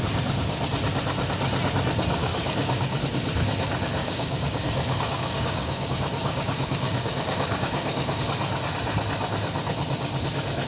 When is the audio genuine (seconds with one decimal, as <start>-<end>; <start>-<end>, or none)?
0.0-2.2; 3.0-4.0; 8.2-10.7